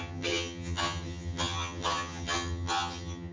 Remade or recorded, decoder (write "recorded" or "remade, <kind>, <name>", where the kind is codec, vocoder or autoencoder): remade, vocoder, HiFi-GAN